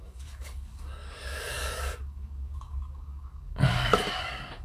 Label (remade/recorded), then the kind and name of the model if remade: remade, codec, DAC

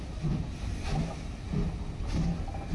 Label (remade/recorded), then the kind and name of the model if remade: recorded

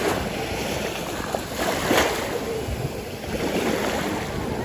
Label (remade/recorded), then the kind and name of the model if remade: recorded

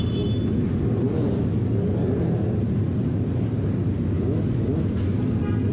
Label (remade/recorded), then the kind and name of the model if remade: recorded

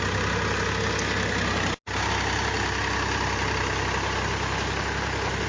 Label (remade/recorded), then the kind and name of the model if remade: recorded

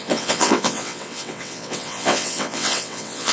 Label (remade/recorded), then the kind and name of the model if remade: remade, vocoder, WaveNeXt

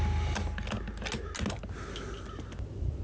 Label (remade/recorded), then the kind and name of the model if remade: recorded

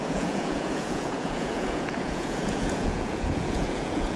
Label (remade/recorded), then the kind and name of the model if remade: remade, vocoder, Vocos